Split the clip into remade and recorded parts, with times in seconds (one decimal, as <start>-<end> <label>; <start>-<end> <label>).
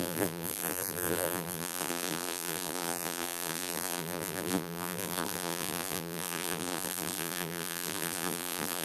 0.0-8.8 remade